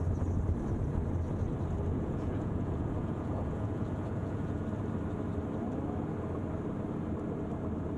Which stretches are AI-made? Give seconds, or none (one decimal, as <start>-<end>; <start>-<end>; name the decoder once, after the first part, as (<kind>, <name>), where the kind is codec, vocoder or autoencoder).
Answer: 1.9-4.6 (vocoder, Vocos)

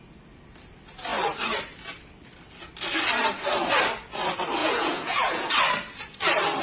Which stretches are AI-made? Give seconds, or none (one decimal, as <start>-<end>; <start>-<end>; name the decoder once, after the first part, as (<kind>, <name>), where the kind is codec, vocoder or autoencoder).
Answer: 4.6-5.5 (vocoder, Vocos)

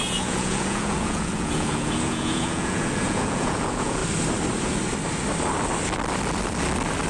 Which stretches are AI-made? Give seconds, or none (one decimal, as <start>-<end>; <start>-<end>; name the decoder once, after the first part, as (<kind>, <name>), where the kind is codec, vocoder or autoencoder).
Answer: 0.0-4.0 (vocoder, Vocos)